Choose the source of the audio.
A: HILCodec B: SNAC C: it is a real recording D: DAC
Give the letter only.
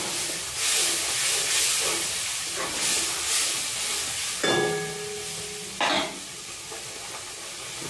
C